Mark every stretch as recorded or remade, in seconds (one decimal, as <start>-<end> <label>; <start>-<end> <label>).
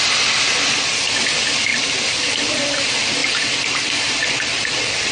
0.0-1.7 recorded; 1.7-2.8 remade; 2.8-3.2 recorded; 3.2-4.1 remade; 4.1-5.1 recorded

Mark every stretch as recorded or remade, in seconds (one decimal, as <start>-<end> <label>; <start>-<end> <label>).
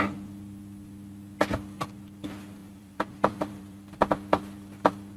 0.0-2.6 recorded; 2.6-5.2 remade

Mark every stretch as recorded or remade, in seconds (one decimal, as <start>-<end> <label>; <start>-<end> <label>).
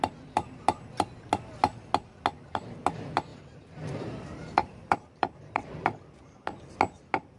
0.0-3.3 recorded; 3.3-5.7 remade; 5.7-7.4 recorded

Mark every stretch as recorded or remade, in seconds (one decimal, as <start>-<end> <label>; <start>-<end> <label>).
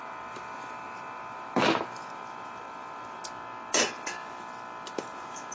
0.0-3.2 remade; 3.2-4.9 recorded; 4.9-5.5 remade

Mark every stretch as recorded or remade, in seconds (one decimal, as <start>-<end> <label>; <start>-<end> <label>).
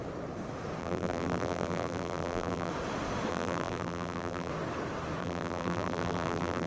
0.0-0.8 recorded; 0.8-2.7 remade; 2.7-3.3 recorded; 3.3-4.5 remade; 4.5-5.2 recorded; 5.2-6.7 remade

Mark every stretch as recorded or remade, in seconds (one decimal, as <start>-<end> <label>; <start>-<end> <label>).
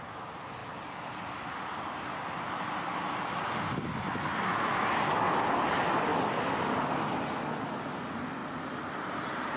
0.0-8.4 recorded; 8.4-9.1 remade; 9.1-9.6 recorded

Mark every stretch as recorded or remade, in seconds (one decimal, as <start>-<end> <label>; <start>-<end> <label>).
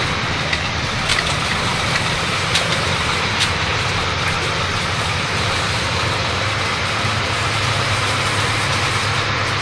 0.0-1.1 recorded; 1.1-4.1 remade; 4.1-4.7 recorded; 4.7-8.7 remade; 8.7-9.6 recorded